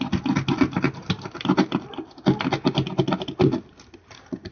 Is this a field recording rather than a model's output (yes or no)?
yes